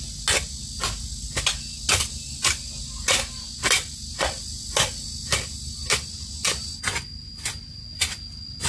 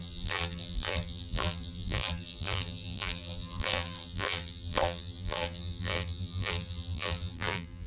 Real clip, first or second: first